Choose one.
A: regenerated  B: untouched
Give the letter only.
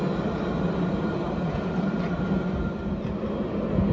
B